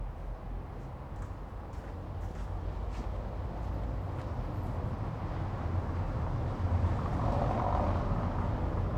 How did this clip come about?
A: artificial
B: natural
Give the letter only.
B